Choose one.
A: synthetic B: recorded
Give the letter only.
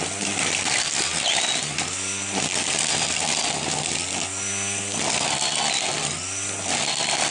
B